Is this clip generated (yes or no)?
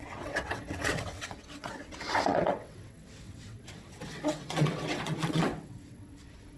yes